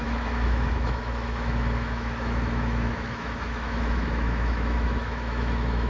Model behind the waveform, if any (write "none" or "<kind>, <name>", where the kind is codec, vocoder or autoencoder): autoencoder, DAC-VAE